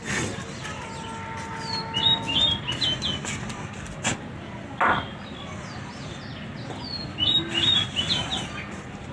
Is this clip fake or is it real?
real